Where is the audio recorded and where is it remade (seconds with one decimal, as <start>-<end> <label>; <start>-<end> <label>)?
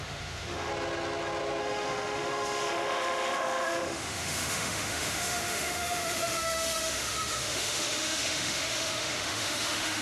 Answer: 0.0-0.7 remade; 0.7-1.6 recorded; 1.6-10.0 remade